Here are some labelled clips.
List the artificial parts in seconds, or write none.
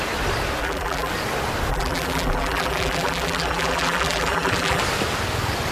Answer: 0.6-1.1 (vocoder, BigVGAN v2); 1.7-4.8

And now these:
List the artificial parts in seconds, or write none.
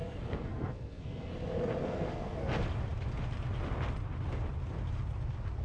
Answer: 0.0-1.3 (codec, SNAC); 1.8-2.5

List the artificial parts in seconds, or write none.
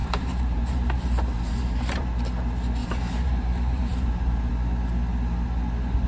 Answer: 0.0-2.1 (vocoder, BigVGAN v2); 2.8-4.5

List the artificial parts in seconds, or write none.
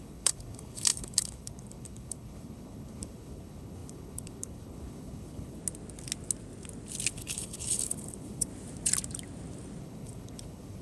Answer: 0.0-5.6 (codec, HILCodec); 7.1-8.5; 9.8-10.8